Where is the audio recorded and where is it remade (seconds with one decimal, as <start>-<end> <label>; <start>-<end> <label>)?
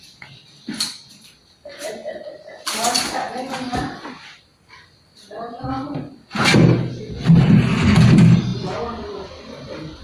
0.0-10.0 recorded